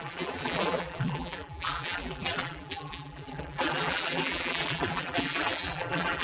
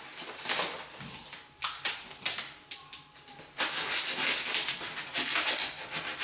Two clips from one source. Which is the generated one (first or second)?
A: first